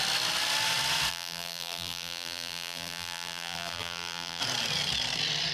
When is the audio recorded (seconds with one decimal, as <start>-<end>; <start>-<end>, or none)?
0.0-1.1; 4.4-5.5